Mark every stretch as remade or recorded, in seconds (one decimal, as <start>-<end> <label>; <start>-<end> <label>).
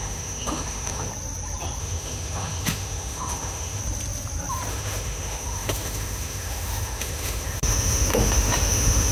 0.0-1.1 remade; 1.1-1.8 recorded; 1.8-3.8 remade; 3.8-4.7 recorded; 4.7-9.1 remade